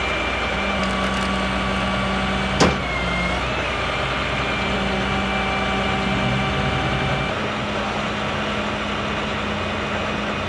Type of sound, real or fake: real